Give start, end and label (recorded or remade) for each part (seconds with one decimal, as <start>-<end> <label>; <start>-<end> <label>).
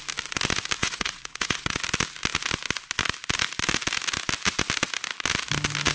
0.0-0.8 recorded; 0.8-1.8 remade; 1.8-5.9 recorded